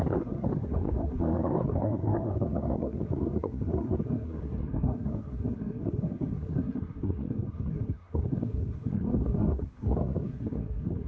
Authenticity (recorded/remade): remade